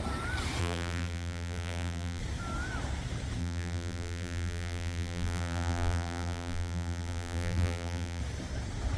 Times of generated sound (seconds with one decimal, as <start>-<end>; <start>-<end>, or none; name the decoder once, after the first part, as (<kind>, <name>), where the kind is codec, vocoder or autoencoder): 0.6-2.2 (vocoder, BigVGAN v2); 3.4-8.2